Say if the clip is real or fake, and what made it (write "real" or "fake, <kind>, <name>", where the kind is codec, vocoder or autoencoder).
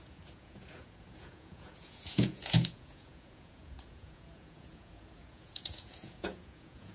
fake, vocoder, Vocos